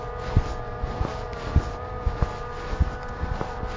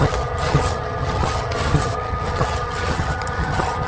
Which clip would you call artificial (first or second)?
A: second